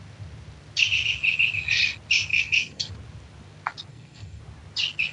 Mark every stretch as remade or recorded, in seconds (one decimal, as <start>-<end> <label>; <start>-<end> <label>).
0.0-2.3 recorded; 2.3-2.9 remade; 2.9-3.9 recorded; 3.9-4.4 remade; 4.4-5.1 recorded